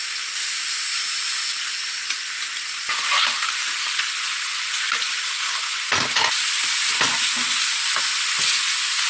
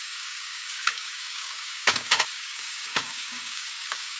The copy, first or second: second